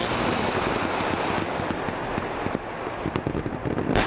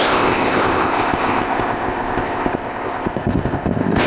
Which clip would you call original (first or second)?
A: first